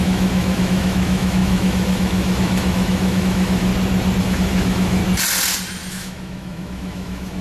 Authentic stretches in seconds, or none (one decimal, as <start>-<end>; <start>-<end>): 3.7-4.2; 5.0-5.9